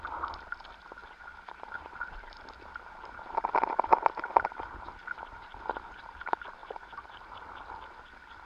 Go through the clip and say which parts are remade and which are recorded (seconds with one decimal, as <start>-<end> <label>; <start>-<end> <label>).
0.0-1.0 recorded; 1.0-5.7 remade; 5.7-6.6 recorded; 6.6-7.4 remade; 7.4-8.5 recorded